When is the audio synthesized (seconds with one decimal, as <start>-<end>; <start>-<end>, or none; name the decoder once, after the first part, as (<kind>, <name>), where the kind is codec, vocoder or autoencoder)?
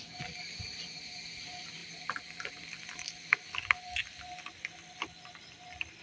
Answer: none